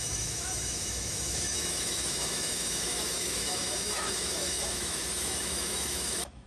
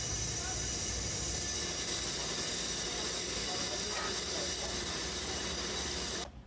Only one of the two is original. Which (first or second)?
second